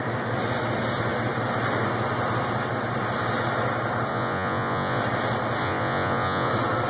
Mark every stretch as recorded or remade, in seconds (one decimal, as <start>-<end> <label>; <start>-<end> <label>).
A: 0.0-4.1 recorded; 4.1-5.0 remade; 5.0-5.6 recorded; 5.6-6.5 remade; 6.5-6.9 recorded